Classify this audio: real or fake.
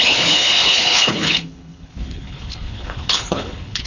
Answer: fake